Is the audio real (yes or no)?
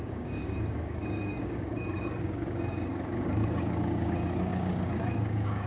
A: no